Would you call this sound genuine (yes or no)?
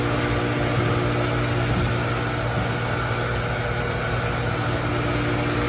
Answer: yes